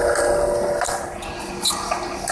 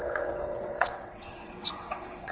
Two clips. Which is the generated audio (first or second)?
second